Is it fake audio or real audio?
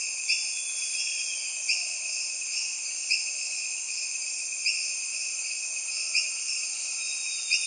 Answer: real